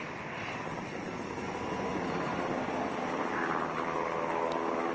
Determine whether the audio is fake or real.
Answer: real